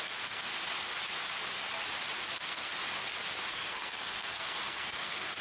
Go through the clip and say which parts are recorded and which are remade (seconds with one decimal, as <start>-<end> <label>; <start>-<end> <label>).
0.0-0.5 remade; 0.5-2.3 recorded; 2.3-2.7 remade; 2.7-3.5 recorded; 3.5-5.4 remade